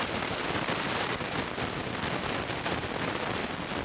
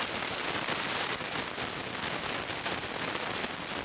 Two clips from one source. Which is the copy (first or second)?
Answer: first